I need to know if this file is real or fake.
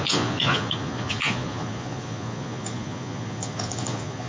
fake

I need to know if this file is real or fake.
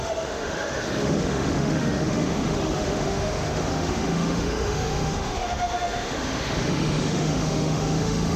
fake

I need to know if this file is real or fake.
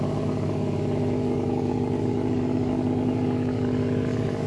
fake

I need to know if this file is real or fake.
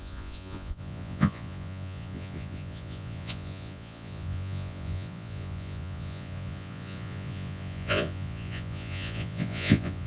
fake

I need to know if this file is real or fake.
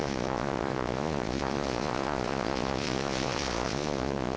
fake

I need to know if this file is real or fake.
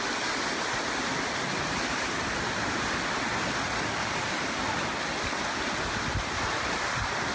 real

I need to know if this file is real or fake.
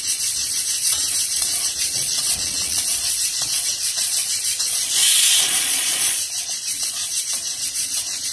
fake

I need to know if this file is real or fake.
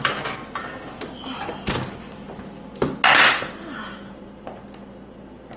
real